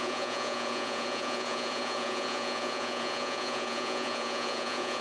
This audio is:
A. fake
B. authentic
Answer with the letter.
A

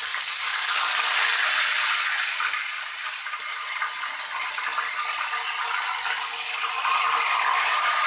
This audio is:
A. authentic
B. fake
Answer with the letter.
A